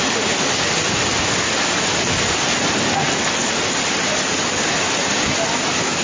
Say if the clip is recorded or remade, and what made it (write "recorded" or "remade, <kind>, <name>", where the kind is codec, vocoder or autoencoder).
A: recorded